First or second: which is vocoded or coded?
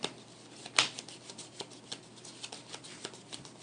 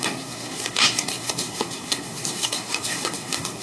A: second